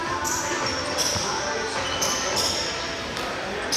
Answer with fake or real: real